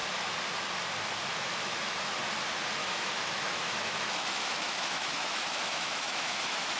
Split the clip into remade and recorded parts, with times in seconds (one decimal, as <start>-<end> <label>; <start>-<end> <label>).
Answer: 0.0-1.3 recorded; 1.3-2.1 remade; 2.1-2.8 recorded; 2.8-6.8 remade